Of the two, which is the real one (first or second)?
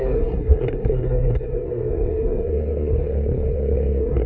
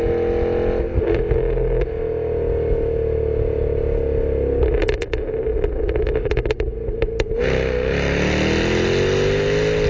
second